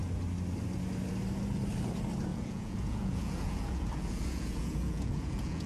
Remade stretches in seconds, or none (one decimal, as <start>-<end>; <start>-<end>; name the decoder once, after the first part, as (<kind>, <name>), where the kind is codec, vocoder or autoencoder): 2.3-5.7 (vocoder, Vocos)